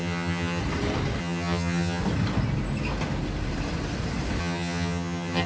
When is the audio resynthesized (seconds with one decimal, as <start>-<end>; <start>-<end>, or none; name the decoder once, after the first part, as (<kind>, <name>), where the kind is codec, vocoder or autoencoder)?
0.0-0.6 (vocoder, HiFi-GAN); 1.2-2.0; 4.4-5.5